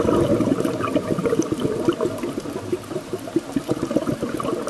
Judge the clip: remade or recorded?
recorded